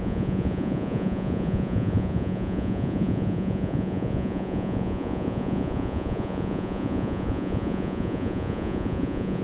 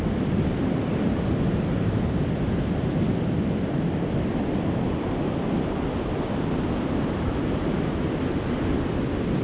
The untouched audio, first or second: second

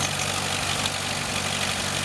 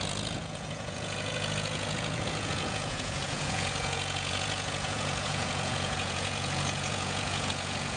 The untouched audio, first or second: first